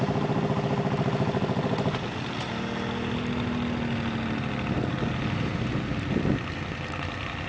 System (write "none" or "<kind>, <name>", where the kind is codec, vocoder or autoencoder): none